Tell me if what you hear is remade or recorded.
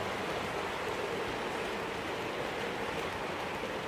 recorded